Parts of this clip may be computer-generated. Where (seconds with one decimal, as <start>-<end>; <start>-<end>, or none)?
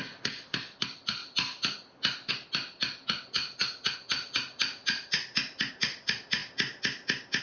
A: none